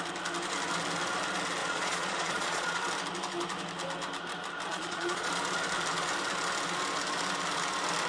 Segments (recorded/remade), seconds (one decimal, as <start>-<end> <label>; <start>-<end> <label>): 0.0-1.6 recorded; 1.6-2.8 remade; 2.8-4.7 recorded; 4.7-5.3 remade; 5.3-8.1 recorded